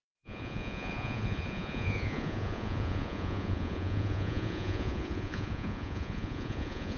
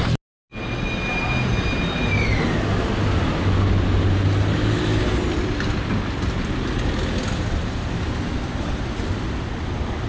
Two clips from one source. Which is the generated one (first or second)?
first